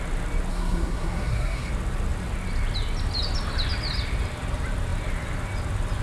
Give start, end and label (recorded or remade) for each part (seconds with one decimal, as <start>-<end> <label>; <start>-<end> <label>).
0.0-0.5 recorded; 0.5-1.7 remade; 1.7-6.0 recorded